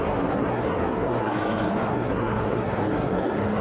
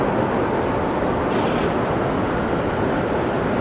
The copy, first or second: first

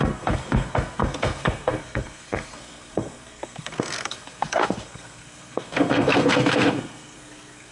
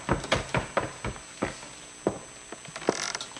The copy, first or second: first